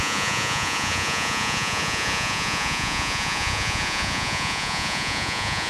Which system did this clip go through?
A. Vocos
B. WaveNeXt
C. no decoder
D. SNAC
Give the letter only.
A